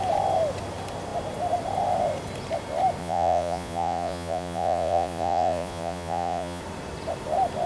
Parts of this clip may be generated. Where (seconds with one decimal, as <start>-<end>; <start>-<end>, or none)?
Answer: 3.0-6.6